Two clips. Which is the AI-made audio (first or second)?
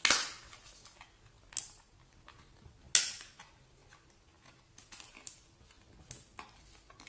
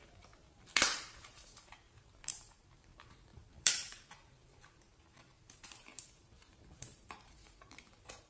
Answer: second